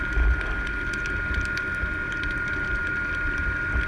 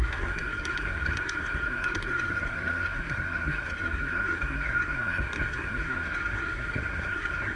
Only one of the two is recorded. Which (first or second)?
first